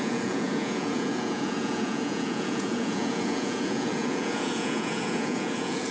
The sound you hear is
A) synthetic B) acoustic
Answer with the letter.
A